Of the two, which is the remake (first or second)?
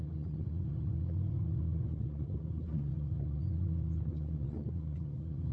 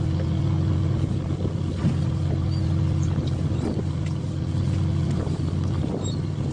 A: first